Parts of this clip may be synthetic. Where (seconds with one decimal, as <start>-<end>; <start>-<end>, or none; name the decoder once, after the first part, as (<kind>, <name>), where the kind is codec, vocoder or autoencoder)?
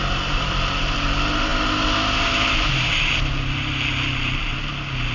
none